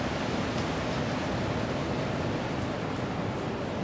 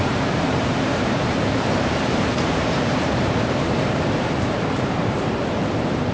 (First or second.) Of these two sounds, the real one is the first